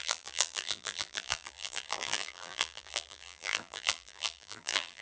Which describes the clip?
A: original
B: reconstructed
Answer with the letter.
B